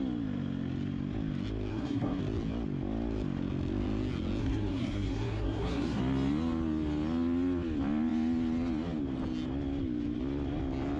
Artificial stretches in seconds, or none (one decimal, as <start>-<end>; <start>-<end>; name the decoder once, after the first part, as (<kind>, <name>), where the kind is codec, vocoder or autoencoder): 1.7-2.2 (codec, SNAC); 4.4-6.0